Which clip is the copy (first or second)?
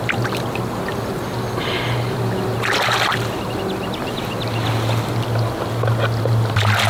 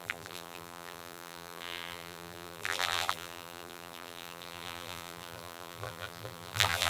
second